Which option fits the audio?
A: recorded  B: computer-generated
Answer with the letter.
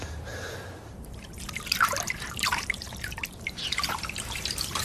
B